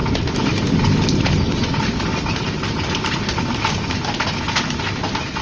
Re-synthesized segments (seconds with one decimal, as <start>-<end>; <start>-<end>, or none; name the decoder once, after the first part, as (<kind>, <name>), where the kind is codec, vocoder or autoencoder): none

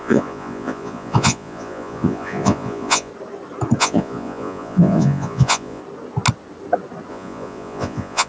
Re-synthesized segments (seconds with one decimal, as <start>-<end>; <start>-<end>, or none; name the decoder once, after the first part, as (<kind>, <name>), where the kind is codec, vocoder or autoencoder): 0.0-3.1 (vocoder, Vocos); 3.8-5.8; 7.1-8.3

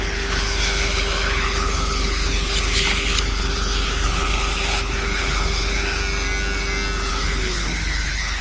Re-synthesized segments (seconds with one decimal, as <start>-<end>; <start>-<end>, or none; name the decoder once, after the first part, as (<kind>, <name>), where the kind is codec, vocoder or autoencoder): 0.0-6.0 (codec, HILCodec); 7.1-8.4

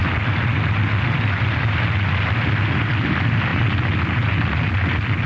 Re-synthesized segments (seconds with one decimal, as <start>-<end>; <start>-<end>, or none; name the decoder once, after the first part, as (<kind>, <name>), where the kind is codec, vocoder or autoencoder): none